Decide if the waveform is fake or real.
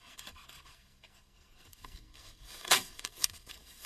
fake